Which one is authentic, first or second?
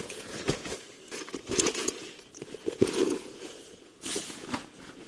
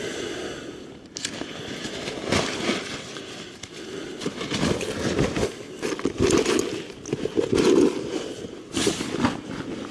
second